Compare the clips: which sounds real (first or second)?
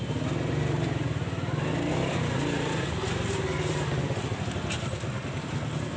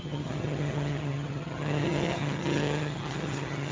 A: first